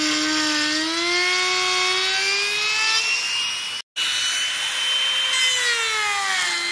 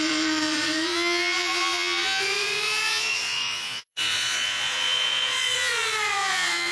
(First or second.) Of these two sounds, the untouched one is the first